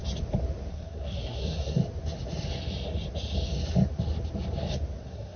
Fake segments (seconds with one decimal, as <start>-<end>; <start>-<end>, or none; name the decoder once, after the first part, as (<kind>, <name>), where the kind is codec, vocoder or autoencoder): 0.7-1.8 (codec, SNAC); 5.0-5.4